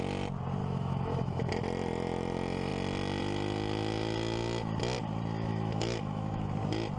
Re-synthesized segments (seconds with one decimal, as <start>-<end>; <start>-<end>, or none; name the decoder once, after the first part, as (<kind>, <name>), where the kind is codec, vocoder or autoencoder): 0.6-1.5 (autoencoder, DAC-VAE); 5.5-6.5